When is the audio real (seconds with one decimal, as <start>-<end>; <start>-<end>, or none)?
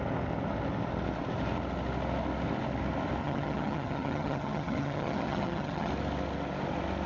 0.0-3.2; 5.9-7.1